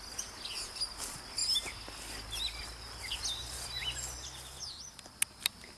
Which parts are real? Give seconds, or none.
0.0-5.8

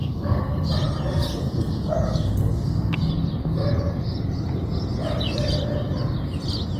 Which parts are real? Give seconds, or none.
0.7-1.4; 3.1-6.8

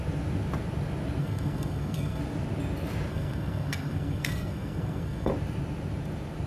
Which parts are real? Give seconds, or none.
0.0-1.2; 2.2-3.1; 5.3-6.5

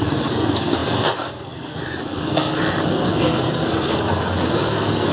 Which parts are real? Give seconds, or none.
none